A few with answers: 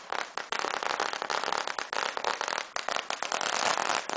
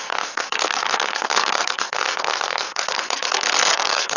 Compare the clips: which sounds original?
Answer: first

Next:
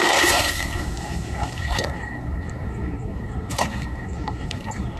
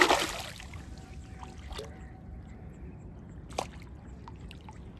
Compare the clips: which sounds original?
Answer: second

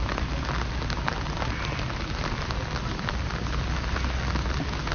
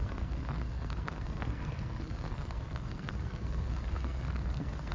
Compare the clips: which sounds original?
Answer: first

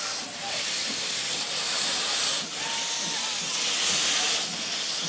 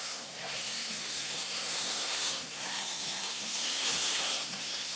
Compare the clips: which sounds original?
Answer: first